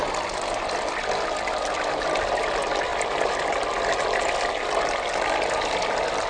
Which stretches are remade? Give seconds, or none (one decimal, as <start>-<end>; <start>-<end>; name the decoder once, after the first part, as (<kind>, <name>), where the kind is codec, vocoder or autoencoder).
none